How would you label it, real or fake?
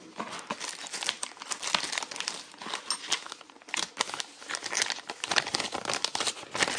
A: real